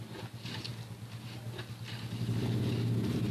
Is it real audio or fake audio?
real